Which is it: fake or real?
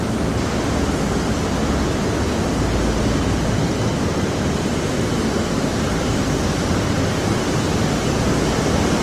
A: real